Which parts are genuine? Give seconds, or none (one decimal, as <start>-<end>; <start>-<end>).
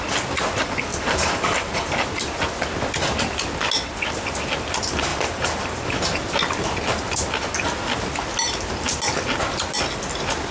0.0-0.9; 1.7-5.1; 6.2-10.5